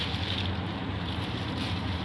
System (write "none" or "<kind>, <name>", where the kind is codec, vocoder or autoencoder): vocoder, BigVGAN v2